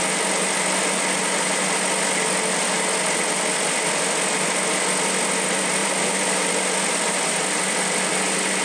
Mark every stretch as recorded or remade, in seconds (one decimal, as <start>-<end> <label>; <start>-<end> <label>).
0.0-5.8 recorded; 5.8-6.5 remade; 6.5-8.6 recorded